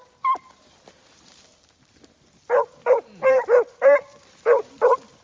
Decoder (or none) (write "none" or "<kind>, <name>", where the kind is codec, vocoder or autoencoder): vocoder, BigVGAN v2